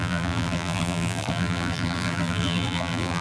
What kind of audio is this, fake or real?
fake